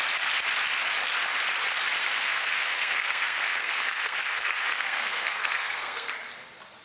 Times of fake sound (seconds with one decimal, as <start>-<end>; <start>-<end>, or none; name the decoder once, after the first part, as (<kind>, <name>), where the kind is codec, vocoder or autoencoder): 2.0-6.1 (codec, SNAC)